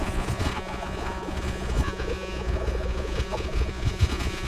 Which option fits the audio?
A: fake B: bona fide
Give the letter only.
A